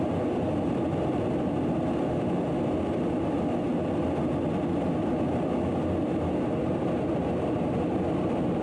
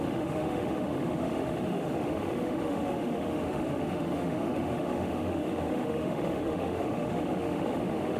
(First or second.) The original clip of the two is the first